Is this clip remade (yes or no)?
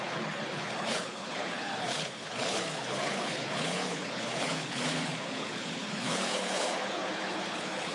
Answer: yes